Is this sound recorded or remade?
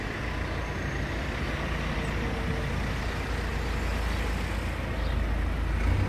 recorded